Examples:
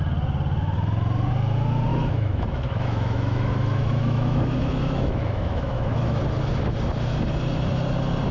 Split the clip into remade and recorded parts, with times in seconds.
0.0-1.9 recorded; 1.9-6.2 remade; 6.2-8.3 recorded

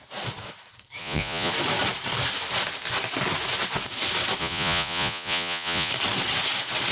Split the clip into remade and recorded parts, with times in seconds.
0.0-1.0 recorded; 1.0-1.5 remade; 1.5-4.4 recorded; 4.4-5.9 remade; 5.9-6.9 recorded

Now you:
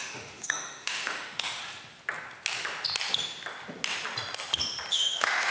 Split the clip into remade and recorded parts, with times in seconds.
0.0-1.6 remade; 1.6-4.9 recorded; 4.9-5.5 remade

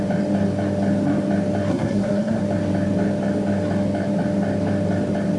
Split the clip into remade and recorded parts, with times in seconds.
0.0-1.7 recorded; 1.7-2.4 remade; 2.4-5.4 recorded

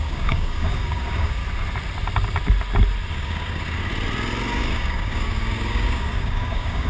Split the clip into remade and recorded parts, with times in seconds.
0.0-1.4 remade; 1.4-3.1 recorded; 3.1-3.9 remade; 3.9-4.6 recorded; 4.6-6.9 remade

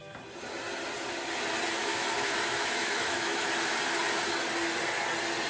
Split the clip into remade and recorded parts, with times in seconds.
0.0-1.8 recorded; 1.8-3.5 remade; 3.5-5.5 recorded